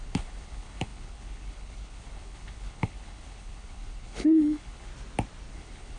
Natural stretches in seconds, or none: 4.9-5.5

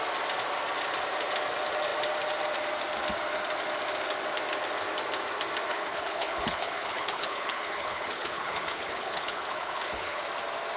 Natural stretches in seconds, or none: 0.0-5.7; 10.2-10.8

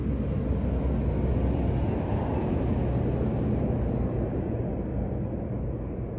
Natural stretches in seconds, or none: 0.0-6.2

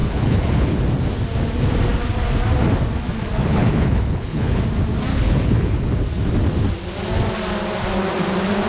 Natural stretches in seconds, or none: 0.8-3.4; 4.6-5.1; 5.9-8.7

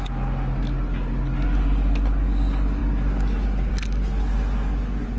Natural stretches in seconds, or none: 0.0-5.2